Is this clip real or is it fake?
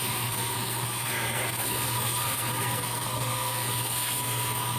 fake